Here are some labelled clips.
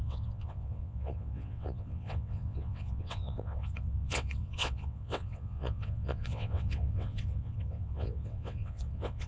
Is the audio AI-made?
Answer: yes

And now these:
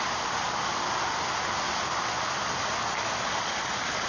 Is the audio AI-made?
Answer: no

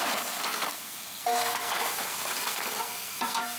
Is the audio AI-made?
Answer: yes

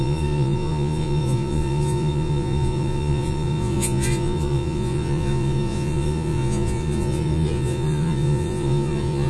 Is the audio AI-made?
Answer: yes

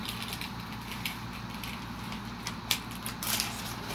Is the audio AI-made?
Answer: no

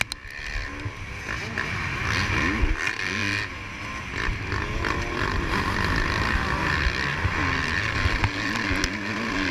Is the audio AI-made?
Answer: no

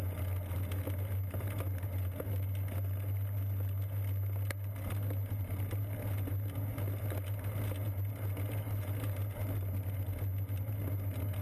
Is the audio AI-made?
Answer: no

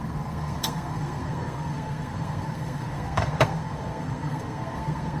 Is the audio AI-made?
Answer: yes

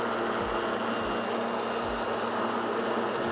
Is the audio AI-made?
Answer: no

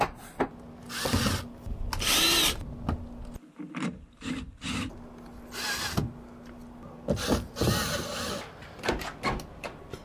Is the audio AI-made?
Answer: no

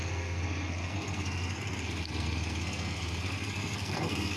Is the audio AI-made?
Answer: yes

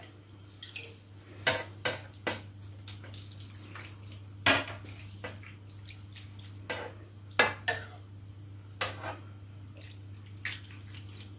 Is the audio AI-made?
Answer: no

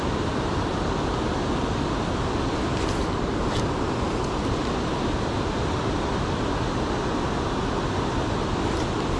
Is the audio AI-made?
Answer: no